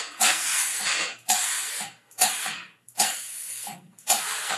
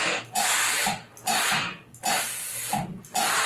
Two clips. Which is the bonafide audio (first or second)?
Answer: second